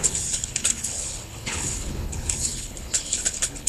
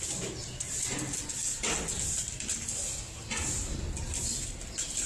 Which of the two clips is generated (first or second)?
first